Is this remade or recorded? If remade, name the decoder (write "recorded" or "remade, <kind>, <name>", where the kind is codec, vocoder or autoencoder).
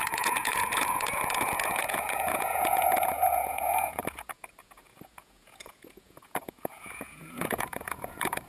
remade, vocoder, Vocos